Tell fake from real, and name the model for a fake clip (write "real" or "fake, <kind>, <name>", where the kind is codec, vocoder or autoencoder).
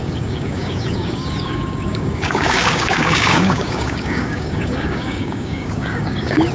fake, codec, DAC